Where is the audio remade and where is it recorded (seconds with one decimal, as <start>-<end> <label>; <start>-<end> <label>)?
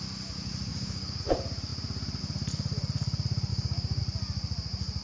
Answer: 0.0-0.7 recorded; 0.7-1.2 remade; 1.2-3.5 recorded; 3.5-4.0 remade; 4.0-5.0 recorded